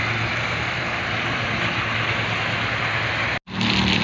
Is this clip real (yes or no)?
yes